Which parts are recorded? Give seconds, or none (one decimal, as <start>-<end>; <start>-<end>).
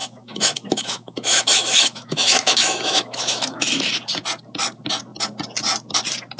3.8-6.4